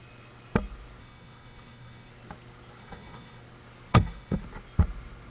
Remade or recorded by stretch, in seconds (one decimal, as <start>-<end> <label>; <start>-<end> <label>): 0.0-1.0 recorded; 1.0-2.1 remade; 2.1-2.8 recorded; 2.8-3.4 remade; 3.4-3.9 recorded; 3.9-4.4 remade; 4.4-5.3 recorded